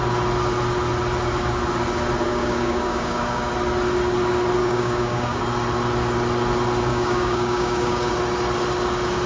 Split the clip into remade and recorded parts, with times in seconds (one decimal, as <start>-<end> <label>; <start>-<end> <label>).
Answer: 0.0-2.3 recorded; 2.3-3.5 remade; 3.5-4.6 recorded; 4.6-5.4 remade; 5.4-6.9 recorded; 6.9-8.1 remade; 8.1-9.3 recorded